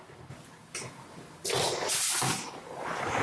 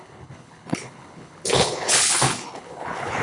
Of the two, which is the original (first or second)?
first